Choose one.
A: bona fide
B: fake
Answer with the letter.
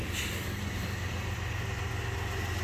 A